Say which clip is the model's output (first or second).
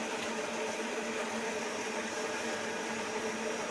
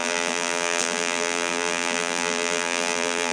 second